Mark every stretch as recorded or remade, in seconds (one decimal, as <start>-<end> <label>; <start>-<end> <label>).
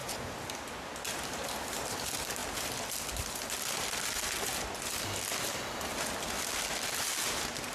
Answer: 0.0-7.7 recorded